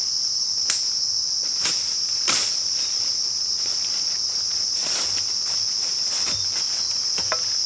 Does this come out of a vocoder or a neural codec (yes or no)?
no